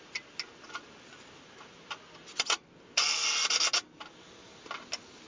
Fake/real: real